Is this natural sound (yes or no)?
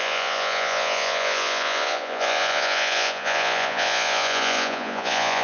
no